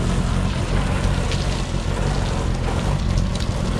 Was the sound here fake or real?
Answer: real